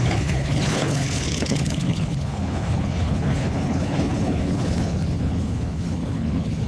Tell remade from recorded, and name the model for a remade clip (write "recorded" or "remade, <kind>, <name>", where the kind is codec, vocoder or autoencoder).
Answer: remade, codec, HILCodec